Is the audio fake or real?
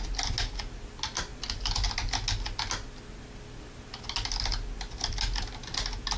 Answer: real